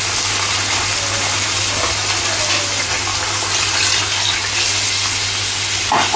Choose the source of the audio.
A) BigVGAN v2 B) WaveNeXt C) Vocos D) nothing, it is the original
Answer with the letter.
D